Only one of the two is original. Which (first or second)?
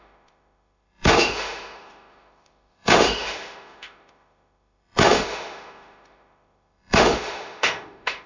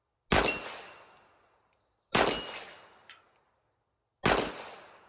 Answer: second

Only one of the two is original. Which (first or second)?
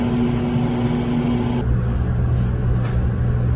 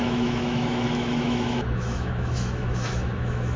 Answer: first